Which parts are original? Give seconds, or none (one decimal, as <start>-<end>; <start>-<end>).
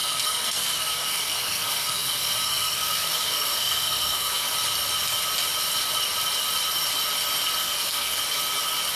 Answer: 4.5-7.6; 8.2-9.0